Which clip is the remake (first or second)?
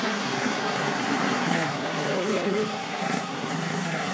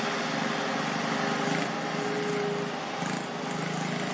first